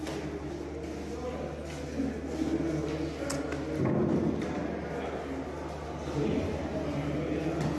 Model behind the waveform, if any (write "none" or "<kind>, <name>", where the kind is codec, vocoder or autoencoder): none